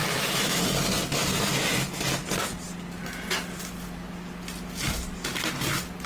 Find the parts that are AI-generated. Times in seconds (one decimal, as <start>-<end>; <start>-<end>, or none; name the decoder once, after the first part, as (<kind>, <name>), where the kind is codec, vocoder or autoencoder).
0.0-0.6 (autoencoder, DAC-VAE)